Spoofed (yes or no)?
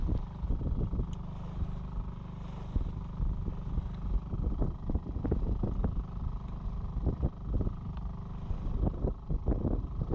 no